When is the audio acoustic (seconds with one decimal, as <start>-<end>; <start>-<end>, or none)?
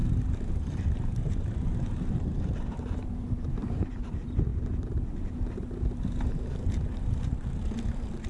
4.5-7.1